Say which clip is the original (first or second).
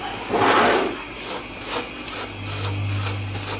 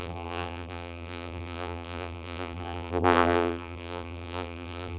first